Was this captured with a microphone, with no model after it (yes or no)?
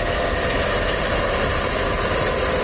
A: yes